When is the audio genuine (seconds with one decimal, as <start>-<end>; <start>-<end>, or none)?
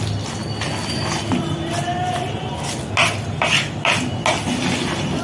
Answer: 0.0-5.2